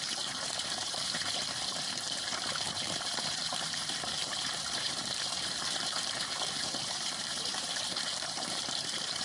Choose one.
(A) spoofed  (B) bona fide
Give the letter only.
A